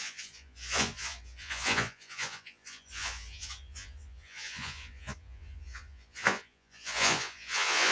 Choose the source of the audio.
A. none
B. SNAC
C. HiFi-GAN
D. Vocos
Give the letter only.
D